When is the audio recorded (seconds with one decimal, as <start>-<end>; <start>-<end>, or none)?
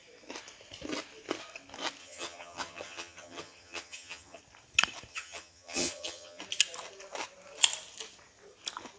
0.0-2.0; 4.4-5.1; 6.4-9.0